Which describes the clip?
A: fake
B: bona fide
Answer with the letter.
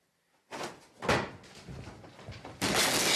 B